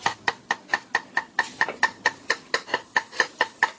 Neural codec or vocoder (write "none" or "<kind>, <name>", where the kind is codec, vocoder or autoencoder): none